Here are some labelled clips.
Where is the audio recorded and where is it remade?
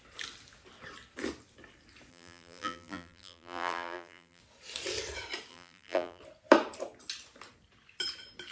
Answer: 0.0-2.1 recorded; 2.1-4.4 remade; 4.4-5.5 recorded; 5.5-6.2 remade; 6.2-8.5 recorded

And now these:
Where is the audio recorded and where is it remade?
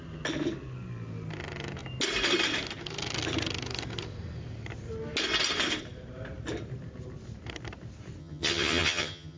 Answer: 0.0-8.2 recorded; 8.2-9.4 remade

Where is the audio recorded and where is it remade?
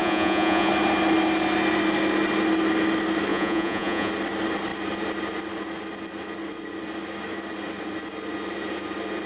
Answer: 0.0-0.7 remade; 0.7-3.3 recorded; 3.3-4.1 remade; 4.1-9.3 recorded